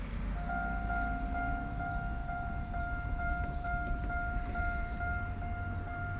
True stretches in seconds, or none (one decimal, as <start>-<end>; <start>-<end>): 0.0-2.2; 5.3-6.2